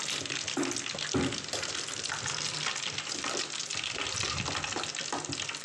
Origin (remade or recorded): recorded